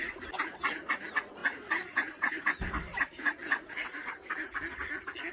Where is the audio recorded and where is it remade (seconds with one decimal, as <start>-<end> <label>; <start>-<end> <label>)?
0.0-0.5 remade; 0.5-1.4 recorded; 1.4-4.6 remade; 4.6-5.3 recorded